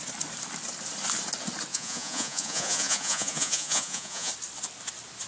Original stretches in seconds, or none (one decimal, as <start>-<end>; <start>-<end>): 0.0-1.7; 4.3-5.3